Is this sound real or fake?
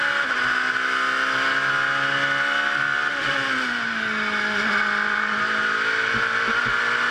real